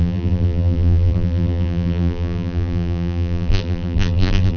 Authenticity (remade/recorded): remade